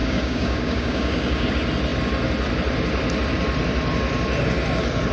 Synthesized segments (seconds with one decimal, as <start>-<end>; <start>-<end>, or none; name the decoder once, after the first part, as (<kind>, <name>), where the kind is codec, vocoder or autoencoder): 0.0-1.5 (codec, DAC)